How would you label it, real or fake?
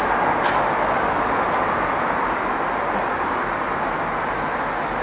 real